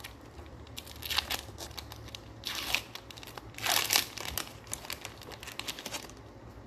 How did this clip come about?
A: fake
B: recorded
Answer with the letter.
B